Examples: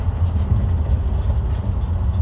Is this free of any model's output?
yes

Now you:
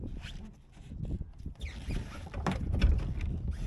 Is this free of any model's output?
yes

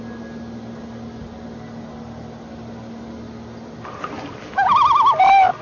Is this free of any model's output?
yes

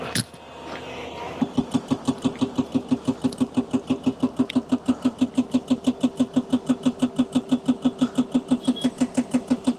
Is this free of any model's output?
yes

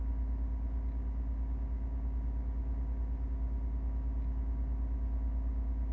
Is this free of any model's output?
yes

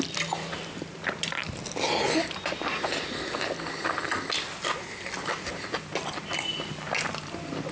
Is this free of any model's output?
yes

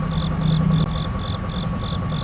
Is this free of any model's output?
yes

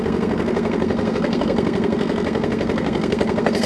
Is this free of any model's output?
no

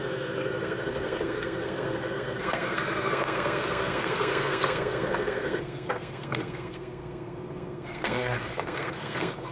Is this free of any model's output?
no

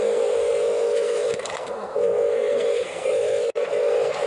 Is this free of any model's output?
no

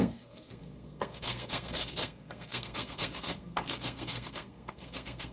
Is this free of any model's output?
no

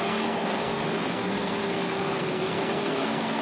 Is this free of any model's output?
no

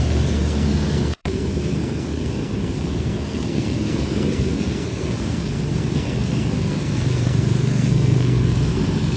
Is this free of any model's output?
no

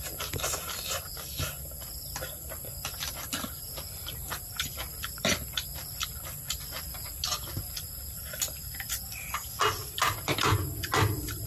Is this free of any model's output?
yes